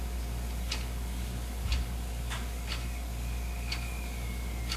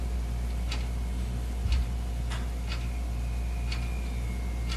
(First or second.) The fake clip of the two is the first